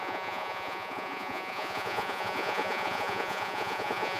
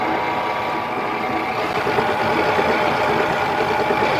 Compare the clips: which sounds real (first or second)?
second